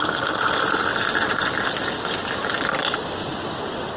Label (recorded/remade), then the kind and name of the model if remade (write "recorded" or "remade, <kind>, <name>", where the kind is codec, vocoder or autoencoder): recorded